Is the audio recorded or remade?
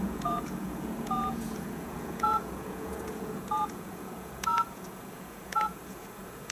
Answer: remade